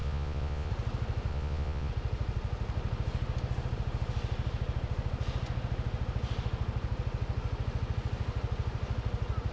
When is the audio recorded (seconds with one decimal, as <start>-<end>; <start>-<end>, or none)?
0.7-1.3; 1.9-9.5